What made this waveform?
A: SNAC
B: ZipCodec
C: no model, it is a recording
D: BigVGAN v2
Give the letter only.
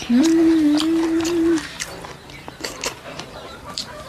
D